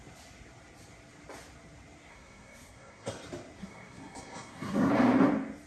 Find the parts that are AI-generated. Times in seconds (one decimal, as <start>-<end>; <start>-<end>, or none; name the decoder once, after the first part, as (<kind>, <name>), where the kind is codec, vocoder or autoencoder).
2.1-3.1 (codec, SNAC); 3.6-4.9